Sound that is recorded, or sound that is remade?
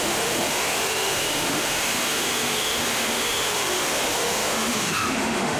remade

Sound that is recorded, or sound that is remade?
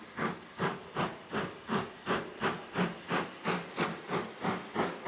recorded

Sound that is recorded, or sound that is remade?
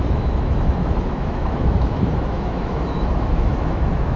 remade